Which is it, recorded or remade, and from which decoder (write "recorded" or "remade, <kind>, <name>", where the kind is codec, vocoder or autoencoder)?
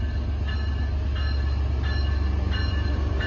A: recorded